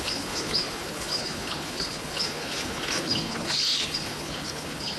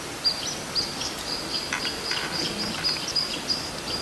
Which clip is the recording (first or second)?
second